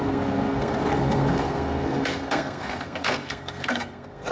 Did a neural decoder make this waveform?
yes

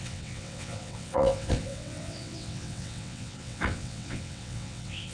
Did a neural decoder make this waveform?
yes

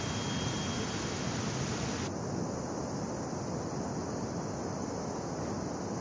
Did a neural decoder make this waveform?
no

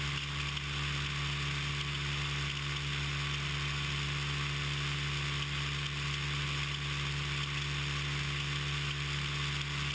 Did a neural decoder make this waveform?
no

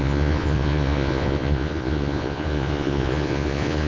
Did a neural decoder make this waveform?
yes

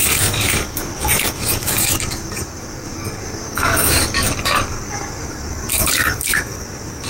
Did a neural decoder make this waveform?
yes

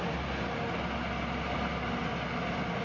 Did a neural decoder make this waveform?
no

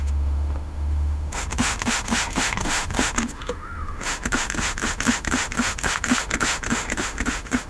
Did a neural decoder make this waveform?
yes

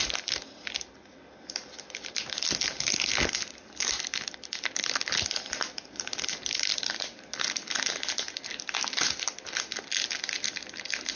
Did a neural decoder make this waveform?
no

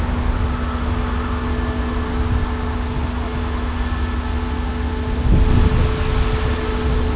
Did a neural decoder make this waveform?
no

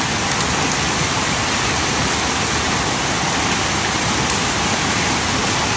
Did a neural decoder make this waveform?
no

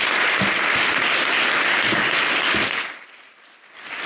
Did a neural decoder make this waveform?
no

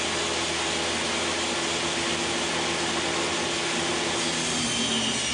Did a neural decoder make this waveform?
no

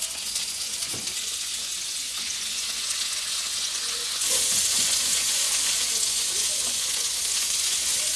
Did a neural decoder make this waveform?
yes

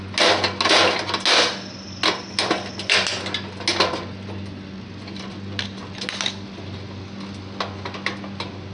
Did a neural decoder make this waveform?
no